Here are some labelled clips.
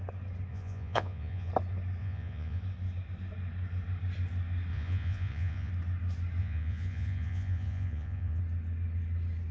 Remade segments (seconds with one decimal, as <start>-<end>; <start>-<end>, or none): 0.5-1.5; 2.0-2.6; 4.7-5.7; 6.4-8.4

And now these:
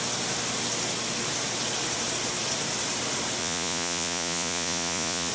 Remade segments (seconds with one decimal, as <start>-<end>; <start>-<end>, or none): 3.4-5.3

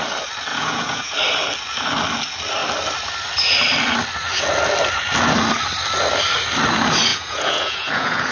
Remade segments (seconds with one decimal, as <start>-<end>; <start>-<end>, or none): 0.5-1.1; 7.1-8.3